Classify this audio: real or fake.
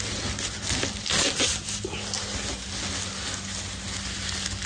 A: real